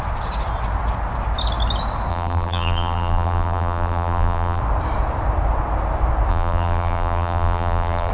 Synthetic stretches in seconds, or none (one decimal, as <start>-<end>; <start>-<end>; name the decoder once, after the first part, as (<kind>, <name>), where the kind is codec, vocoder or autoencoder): 2.1-4.6 (vocoder, BigVGAN v2); 6.3-8.1